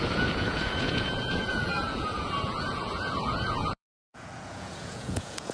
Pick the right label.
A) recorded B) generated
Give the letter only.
B